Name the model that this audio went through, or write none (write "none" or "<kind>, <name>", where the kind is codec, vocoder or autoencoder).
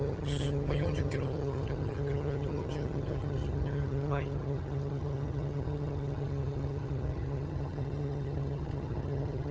vocoder, HiFi-GAN